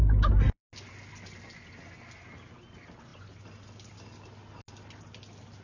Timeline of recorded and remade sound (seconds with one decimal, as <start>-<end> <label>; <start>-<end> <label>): 0.0-5.6 recorded